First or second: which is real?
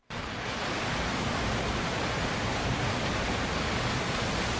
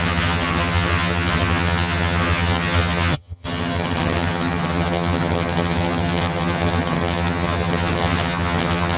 first